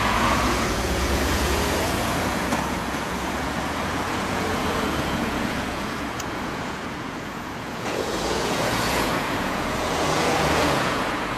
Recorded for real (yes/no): no